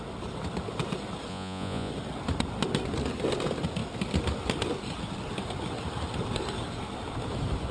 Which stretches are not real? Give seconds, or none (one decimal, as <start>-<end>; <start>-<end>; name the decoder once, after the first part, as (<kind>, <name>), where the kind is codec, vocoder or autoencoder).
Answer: 1.3-1.9 (vocoder, Vocos)